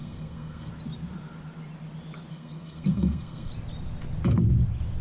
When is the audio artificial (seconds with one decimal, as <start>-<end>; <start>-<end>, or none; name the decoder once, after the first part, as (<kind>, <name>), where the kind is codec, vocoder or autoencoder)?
0.0-0.7 (codec, SNAC); 2.3-3.5